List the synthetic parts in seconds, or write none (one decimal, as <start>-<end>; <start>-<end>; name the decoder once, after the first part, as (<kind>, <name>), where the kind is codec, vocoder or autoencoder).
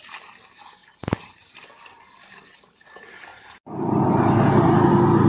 none